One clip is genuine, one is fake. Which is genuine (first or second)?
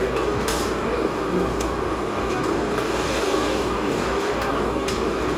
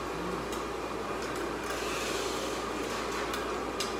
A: second